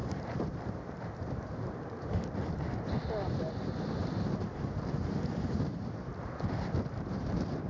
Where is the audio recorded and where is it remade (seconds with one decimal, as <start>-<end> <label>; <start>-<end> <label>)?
0.0-3.0 remade; 3.0-4.4 recorded; 4.4-6.1 remade; 6.1-6.8 recorded; 6.8-7.7 remade